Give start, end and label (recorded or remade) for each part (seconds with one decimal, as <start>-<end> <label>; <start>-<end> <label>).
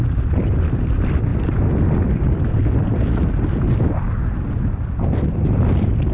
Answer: 0.0-6.1 recorded